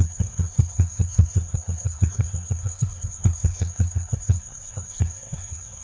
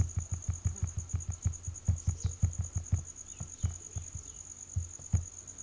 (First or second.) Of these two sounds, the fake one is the first